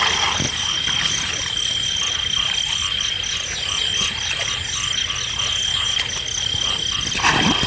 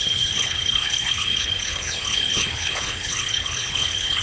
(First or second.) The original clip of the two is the first